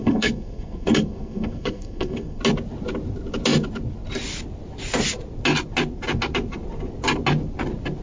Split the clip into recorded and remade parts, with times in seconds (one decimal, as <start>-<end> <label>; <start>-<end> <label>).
0.0-2.4 remade; 2.4-8.0 recorded